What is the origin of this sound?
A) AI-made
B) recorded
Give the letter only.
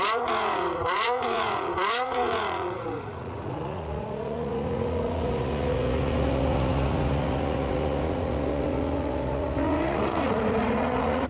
A